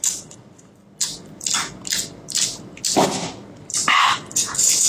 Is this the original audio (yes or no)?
yes